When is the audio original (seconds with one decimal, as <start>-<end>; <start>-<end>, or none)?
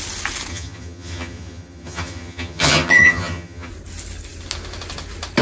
0.0-0.5; 3.7-5.4